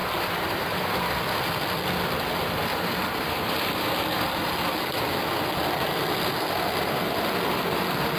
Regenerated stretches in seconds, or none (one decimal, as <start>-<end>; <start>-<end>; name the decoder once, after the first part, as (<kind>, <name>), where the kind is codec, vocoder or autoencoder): 0.0-1.1 (vocoder, BigVGAN v2); 2.7-4.5